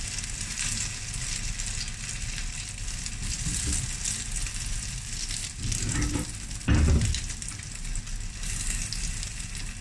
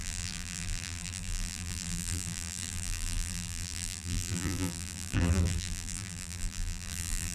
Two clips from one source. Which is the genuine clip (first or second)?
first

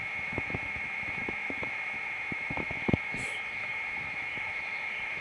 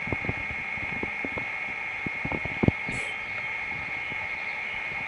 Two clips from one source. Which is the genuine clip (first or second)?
second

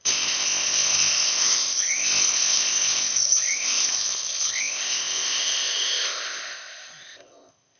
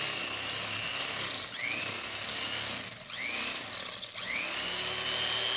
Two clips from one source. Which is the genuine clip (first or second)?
second